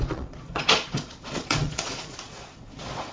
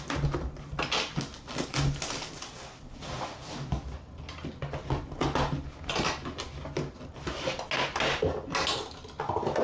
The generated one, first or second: first